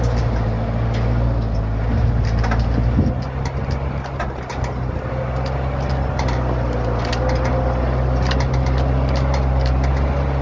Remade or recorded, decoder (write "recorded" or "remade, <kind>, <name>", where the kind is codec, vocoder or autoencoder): recorded